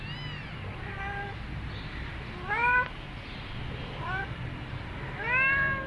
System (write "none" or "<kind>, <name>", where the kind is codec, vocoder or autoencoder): none